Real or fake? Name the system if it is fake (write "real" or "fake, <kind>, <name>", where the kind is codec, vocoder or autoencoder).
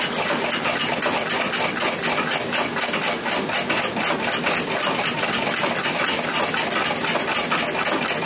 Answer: real